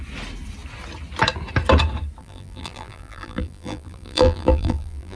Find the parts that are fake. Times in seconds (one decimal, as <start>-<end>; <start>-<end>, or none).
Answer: 2.2-5.2